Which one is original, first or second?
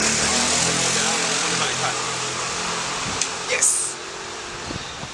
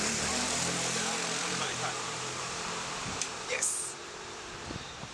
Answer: first